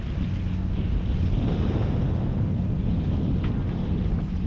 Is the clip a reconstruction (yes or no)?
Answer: no